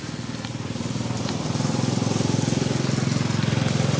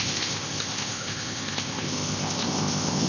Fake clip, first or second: second